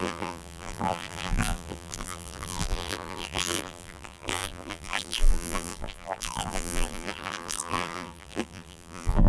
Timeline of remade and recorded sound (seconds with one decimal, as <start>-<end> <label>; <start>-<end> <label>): 0.0-9.3 remade